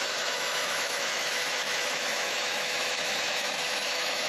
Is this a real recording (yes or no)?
no